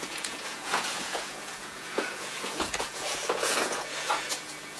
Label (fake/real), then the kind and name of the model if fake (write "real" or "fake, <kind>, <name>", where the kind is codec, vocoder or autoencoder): fake, vocoder, Vocos